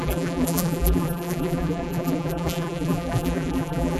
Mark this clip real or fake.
fake